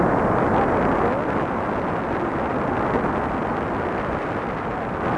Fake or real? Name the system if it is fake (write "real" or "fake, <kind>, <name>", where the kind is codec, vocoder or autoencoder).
real